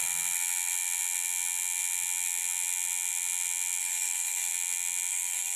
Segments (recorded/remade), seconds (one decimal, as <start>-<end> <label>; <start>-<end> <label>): 0.0-3.8 recorded; 3.8-4.5 remade; 4.5-5.1 recorded; 5.1-5.6 remade